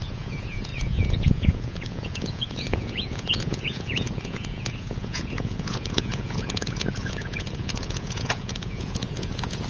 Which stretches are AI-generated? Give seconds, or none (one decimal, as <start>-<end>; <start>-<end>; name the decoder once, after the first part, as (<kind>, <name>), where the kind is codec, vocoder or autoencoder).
0.0-9.7 (vocoder, Vocos)

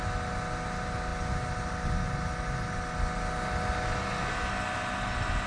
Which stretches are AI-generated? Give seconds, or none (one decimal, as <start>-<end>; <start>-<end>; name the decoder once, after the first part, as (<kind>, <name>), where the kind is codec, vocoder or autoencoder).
none